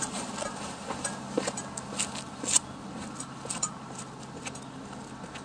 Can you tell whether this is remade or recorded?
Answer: recorded